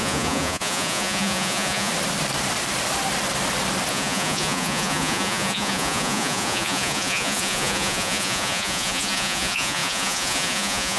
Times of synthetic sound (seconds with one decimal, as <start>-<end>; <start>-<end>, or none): 0.0-1.9; 3.9-11.0